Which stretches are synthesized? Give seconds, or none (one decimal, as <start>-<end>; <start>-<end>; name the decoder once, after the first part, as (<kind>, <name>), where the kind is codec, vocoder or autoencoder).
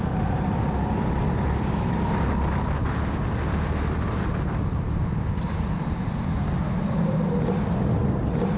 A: none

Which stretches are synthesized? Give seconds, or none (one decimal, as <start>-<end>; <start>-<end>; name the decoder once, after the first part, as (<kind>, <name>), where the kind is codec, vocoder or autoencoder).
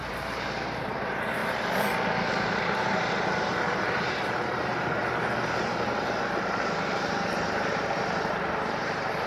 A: 0.0-1.4 (vocoder, BigVGAN v2); 2.3-5.0; 6.1-9.3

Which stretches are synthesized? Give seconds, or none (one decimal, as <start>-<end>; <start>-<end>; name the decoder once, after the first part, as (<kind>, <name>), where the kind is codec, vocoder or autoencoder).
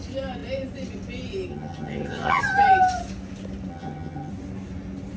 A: 1.5-2.4 (vocoder, HiFi-GAN); 3.7-4.3